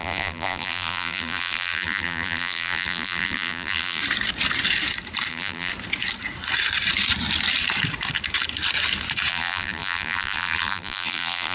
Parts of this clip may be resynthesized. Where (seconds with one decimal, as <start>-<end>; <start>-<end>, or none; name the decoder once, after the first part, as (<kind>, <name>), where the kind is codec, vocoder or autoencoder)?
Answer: 0.0-4.0 (vocoder, BigVGAN v2); 5.3-5.7; 9.3-11.5